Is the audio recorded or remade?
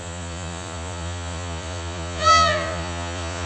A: remade